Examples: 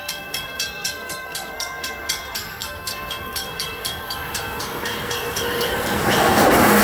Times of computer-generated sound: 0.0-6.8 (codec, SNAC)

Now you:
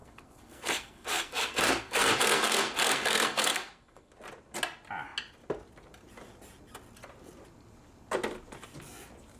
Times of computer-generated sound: 0.0-4.1 (codec, SNAC)

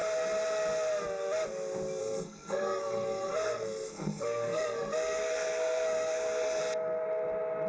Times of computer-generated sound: 2.0-6.6 (codec, SNAC)

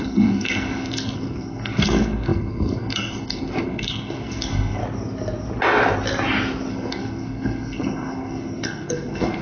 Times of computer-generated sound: 0.0-4.8 (codec, SNAC); 6.7-9.4

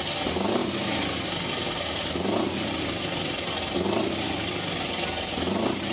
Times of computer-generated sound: none

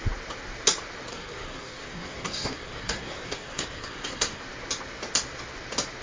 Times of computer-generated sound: 1.1-4.4 (codec, SNAC)